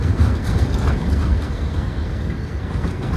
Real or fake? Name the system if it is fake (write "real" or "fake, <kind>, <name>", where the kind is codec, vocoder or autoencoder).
fake, codec, SNAC